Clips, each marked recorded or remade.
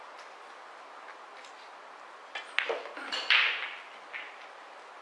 recorded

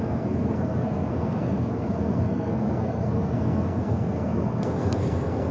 remade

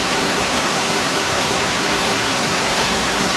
remade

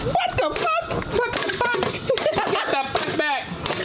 recorded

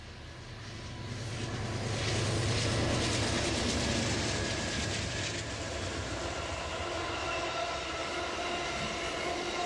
recorded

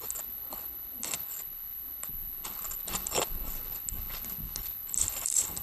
remade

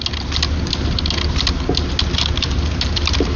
recorded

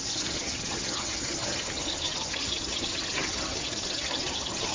remade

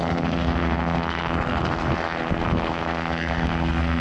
remade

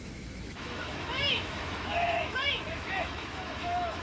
remade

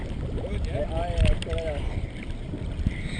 recorded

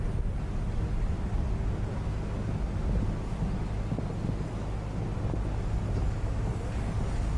recorded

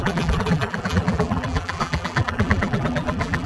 remade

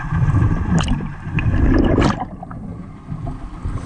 recorded